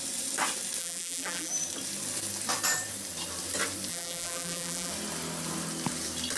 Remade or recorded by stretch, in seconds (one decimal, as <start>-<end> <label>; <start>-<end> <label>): 0.0-0.8 recorded; 0.8-1.5 remade; 1.5-3.9 recorded; 3.9-4.9 remade; 4.9-6.4 recorded

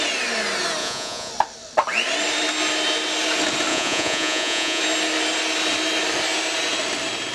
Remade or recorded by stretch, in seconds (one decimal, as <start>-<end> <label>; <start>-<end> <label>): 0.0-0.8 recorded; 0.8-1.3 remade; 1.3-3.7 recorded; 3.7-4.8 remade; 4.8-7.3 recorded